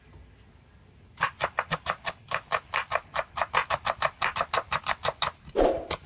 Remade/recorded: recorded